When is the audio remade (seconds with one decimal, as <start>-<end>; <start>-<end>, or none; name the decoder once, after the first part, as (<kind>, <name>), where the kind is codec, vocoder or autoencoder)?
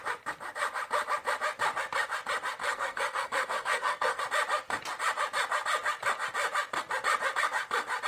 2.6-4.2 (codec, SNAC)